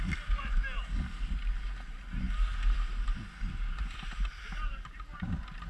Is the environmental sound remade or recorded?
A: recorded